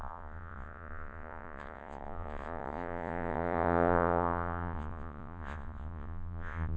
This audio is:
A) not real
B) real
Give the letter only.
A